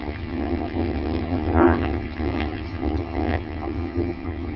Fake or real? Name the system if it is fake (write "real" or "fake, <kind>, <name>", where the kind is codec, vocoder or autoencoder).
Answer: fake, vocoder, HiFi-GAN